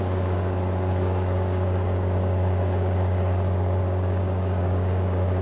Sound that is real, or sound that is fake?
fake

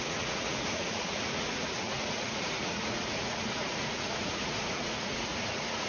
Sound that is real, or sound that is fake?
fake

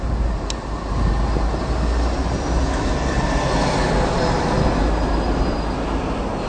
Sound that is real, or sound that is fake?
real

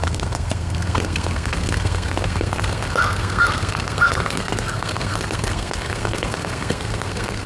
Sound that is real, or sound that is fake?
fake